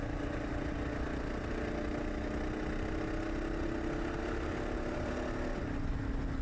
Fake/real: real